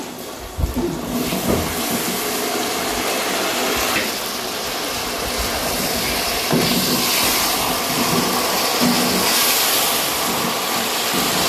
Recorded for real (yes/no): yes